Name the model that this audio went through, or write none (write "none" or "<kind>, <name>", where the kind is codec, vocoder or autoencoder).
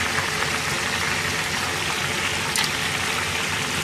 none